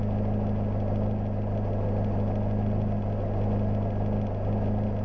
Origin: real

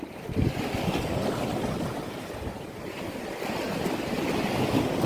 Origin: real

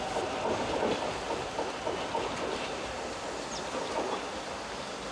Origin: real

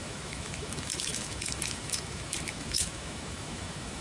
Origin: fake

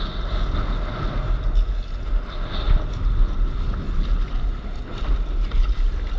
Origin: real